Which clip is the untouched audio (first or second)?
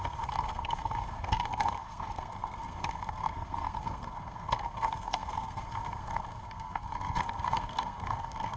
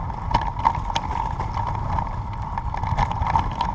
second